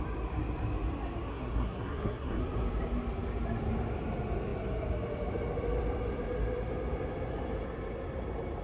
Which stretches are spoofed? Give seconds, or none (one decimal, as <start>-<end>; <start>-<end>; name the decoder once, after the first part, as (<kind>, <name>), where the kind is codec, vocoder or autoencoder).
1.3-2.4 (codec, SNAC)